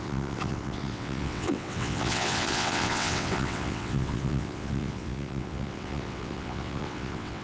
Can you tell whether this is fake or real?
fake